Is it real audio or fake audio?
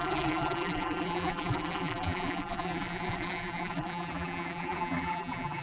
fake